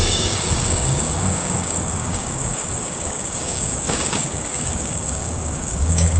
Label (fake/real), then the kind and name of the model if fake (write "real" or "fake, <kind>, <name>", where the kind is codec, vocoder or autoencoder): fake, codec, DAC